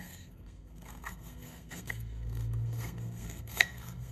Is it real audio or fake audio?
fake